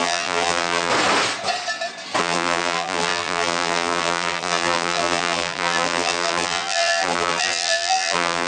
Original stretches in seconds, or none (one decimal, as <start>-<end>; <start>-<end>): 0.9-2.2

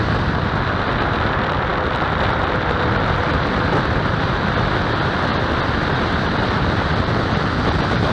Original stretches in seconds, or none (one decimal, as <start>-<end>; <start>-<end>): 0.0-5.3; 6.9-8.1

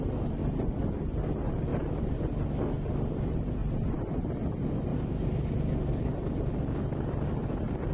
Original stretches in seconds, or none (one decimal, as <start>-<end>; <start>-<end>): 0.0-1.7; 2.2-3.6; 4.1-4.9; 6.1-7.9

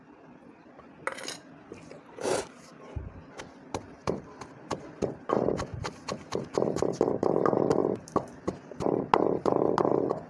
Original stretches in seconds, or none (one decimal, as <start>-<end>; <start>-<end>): 0.0-4.0; 5.5-10.3